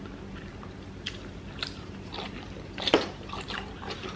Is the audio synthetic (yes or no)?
yes